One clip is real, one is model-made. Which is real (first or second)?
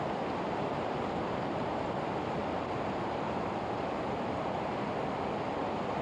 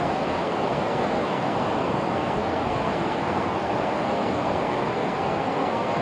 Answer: first